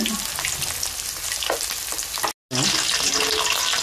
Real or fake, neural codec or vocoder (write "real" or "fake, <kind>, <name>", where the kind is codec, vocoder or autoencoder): real